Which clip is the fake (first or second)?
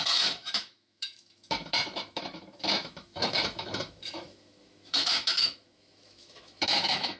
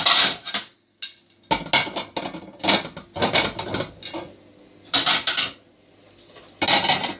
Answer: first